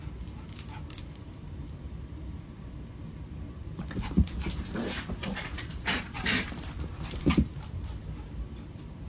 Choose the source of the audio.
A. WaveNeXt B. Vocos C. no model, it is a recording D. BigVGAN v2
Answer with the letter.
D